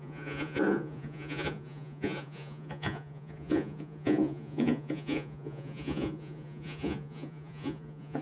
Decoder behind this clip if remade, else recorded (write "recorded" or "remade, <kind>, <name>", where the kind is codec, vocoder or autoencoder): remade, vocoder, Vocos